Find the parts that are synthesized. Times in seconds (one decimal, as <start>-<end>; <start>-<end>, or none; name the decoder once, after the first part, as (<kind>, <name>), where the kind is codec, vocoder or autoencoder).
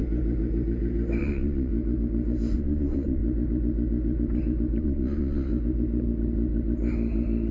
1.2-1.7 (vocoder, Vocos); 2.5-3.2; 4.8-5.5